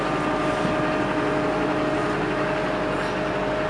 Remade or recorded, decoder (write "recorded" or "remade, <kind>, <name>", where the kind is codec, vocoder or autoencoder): recorded